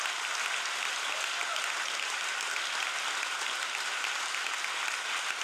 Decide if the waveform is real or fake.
real